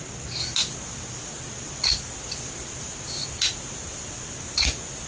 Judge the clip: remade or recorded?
recorded